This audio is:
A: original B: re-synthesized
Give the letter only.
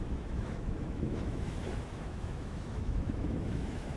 B